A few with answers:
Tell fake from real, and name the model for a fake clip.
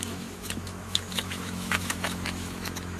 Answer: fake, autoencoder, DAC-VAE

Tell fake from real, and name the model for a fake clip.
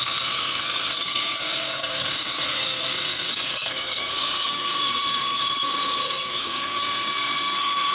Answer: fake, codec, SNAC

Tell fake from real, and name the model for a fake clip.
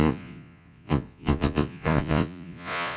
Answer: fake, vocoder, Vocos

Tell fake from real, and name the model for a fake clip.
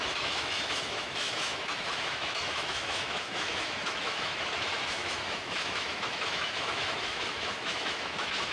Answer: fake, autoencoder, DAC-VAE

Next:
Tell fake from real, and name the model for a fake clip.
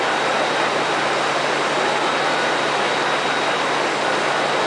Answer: real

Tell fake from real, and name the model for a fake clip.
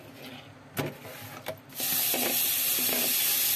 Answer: real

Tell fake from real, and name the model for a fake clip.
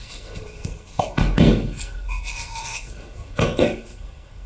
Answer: fake, codec, SNAC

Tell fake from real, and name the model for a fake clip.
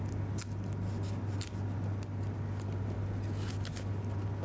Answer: real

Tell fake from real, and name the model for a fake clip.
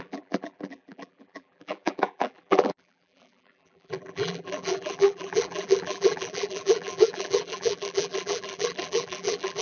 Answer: fake, vocoder, BigVGAN v2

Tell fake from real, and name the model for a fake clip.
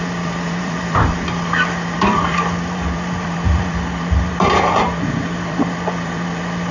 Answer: fake, vocoder, BigVGAN v2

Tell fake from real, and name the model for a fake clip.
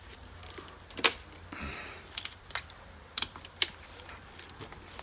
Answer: fake, vocoder, BigVGAN v2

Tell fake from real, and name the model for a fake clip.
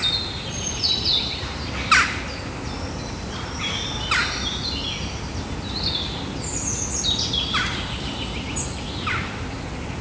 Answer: real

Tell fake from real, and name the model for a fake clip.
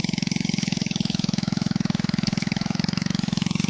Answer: fake, autoencoder, DAC-VAE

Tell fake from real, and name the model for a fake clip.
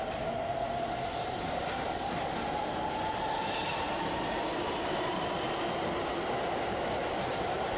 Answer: real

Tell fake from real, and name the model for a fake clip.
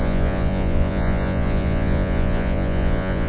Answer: fake, vocoder, Vocos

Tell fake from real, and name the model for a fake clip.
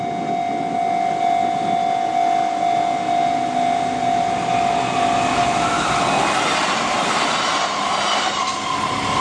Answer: real